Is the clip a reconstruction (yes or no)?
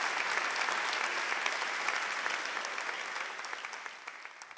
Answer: no